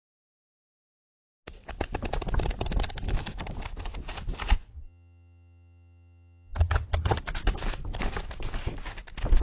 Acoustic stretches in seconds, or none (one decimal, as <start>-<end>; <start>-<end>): 0.0-4.7; 7.2-9.4

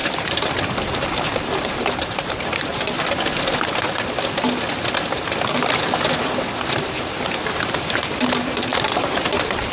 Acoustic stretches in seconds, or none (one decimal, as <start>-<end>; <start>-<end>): 2.7-6.6

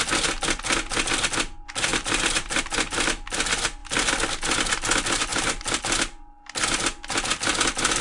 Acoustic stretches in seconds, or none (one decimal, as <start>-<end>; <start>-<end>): 0.0-1.9; 2.6-5.3; 5.8-8.0

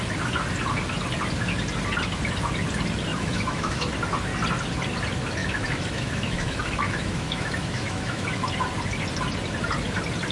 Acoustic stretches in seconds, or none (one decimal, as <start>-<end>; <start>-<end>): 0.0-3.1; 3.9-5.4; 8.5-10.3

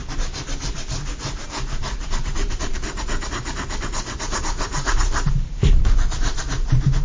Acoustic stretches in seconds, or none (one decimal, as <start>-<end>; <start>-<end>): none